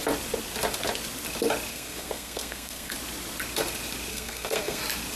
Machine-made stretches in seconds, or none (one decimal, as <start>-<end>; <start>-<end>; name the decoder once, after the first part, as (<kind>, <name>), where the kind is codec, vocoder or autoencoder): 1.7-2.9 (codec, SNAC); 4.1-4.8